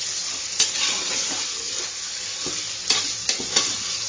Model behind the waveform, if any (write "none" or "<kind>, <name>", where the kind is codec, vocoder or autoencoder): none